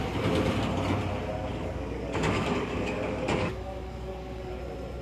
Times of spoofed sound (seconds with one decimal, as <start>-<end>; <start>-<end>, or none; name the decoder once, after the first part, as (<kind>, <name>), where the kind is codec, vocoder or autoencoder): 1.5-4.5 (codec, DAC)